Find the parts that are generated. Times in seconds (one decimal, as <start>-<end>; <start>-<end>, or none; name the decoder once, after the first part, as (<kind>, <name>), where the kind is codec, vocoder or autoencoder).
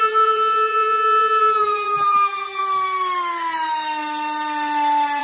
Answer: 0.0-2.6 (vocoder, BigVGAN v2)